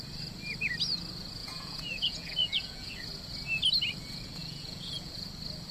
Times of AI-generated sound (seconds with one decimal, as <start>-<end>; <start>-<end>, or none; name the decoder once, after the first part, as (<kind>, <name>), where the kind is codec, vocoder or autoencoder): 1.4-2.9 (vocoder, Vocos); 4.4-5.1